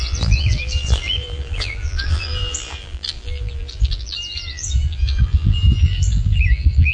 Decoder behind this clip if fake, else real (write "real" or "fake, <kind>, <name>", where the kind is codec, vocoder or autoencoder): fake, vocoder, BigVGAN v2